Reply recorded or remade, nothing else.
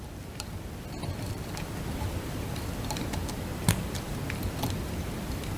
remade